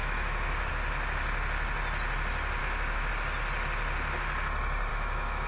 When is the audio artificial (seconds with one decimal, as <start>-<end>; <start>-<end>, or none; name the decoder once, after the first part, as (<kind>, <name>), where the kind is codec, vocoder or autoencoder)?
0.0-0.7 (autoencoder, DAC-VAE); 2.6-3.1; 4.9-5.5